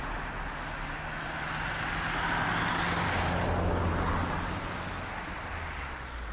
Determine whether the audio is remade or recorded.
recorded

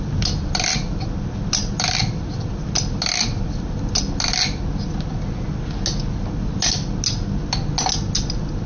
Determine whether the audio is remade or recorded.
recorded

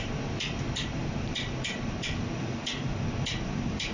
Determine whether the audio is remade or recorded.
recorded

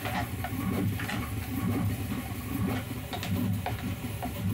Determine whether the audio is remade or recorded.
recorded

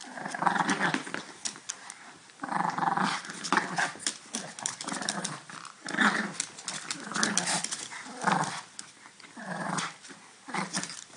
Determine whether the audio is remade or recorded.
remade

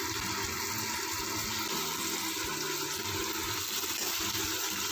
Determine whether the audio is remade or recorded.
recorded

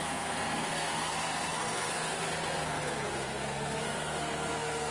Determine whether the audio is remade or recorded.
remade